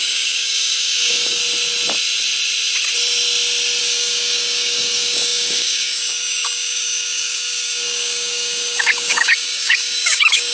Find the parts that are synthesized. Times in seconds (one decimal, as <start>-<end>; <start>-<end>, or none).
0.0-1.4; 3.8-10.5